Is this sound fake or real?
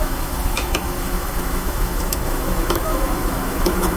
fake